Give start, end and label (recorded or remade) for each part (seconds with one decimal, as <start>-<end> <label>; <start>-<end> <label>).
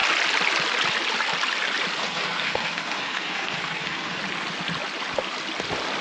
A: 0.0-2.0 recorded; 2.0-4.2 remade; 4.2-6.0 recorded